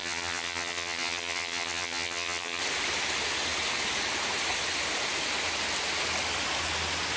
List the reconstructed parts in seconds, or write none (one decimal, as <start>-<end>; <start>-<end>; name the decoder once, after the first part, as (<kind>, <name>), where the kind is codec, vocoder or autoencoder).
0.0-2.6 (vocoder, HiFi-GAN)